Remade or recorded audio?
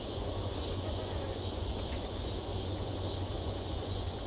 remade